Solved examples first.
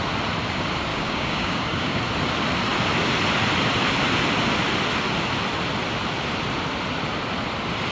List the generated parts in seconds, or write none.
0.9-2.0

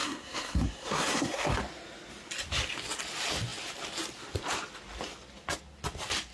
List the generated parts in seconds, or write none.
0.0-1.6

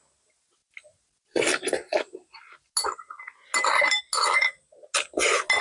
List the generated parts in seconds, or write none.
none

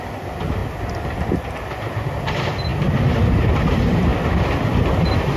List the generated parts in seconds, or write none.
none